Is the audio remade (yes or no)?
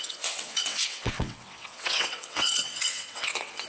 yes